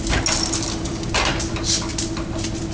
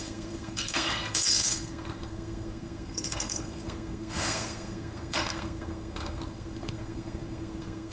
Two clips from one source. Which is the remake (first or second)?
second